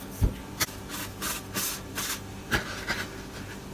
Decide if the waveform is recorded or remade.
recorded